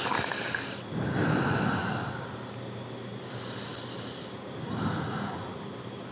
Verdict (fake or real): real